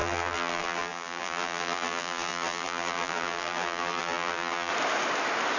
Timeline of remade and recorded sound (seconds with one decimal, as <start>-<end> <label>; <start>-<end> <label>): 0.0-4.7 remade; 4.7-5.6 recorded